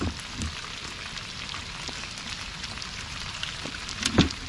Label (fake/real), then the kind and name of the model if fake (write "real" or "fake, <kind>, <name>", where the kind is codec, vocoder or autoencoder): real